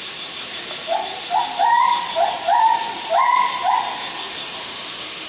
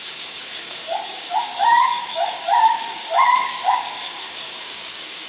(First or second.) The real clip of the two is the first